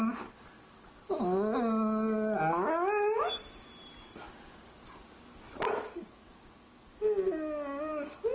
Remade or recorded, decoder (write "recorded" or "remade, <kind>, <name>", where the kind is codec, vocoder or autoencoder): recorded